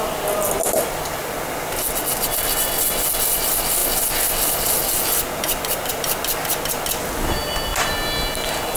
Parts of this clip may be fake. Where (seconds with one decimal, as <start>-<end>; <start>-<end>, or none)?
none